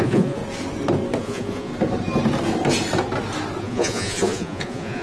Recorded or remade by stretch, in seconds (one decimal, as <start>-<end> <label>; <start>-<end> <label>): 0.0-0.4 remade; 0.4-1.2 recorded; 1.2-1.7 remade; 1.7-3.6 recorded; 3.6-5.0 remade